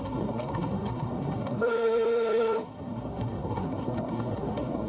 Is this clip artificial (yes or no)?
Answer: yes